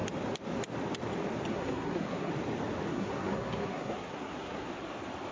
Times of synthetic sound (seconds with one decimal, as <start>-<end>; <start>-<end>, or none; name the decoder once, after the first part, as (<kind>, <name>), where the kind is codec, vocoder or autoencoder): 1.5-2.3 (codec, SNAC); 2.9-4.7